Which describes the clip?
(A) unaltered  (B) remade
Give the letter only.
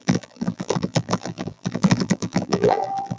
B